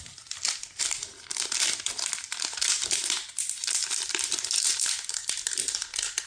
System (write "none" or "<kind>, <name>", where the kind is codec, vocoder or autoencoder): none